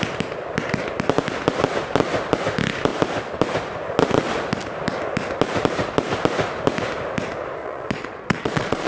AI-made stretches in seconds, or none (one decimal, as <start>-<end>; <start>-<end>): 7.6-8.9